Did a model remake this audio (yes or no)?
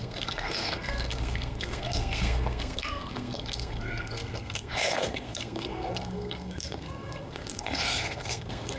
yes